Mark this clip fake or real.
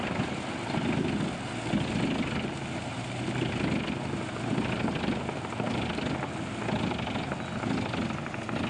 real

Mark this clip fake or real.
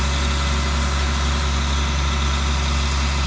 real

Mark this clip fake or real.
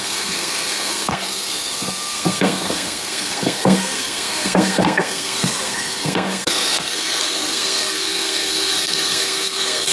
fake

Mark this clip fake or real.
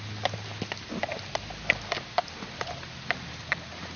real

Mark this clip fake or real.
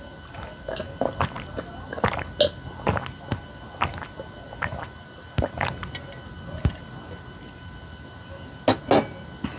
real